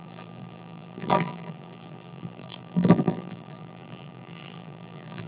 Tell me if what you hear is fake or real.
fake